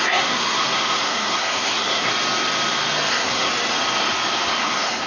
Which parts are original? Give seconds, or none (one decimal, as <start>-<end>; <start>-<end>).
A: 2.1-3.1; 3.5-4.6